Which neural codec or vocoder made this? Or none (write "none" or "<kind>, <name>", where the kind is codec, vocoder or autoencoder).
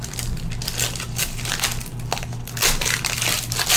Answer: none